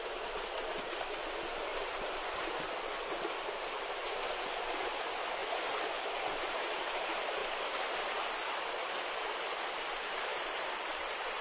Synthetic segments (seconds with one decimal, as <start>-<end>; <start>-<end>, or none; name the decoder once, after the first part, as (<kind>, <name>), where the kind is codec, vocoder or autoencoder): 1.7-2.5 (vocoder, BigVGAN v2); 10.3-11.4